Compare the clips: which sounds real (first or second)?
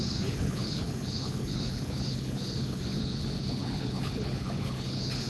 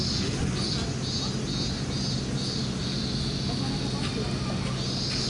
second